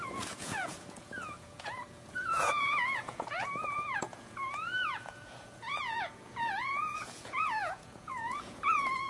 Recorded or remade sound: remade